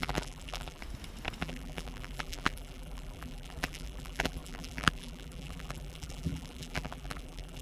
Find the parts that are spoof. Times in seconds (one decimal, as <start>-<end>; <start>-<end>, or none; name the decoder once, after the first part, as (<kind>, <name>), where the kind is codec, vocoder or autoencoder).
0.0-0.8 (vocoder, BigVGAN v2); 1.4-7.6